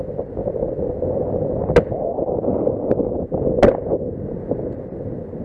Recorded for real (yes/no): yes